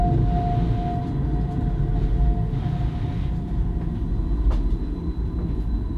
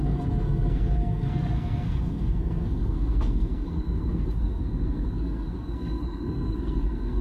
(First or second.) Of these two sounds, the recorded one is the first